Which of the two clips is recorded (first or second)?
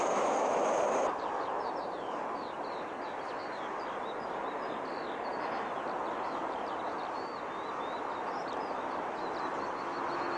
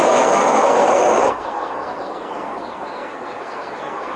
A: first